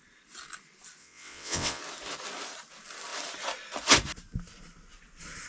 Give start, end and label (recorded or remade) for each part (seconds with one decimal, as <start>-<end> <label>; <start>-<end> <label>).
0.0-1.0 recorded; 1.0-1.8 remade; 1.8-5.5 recorded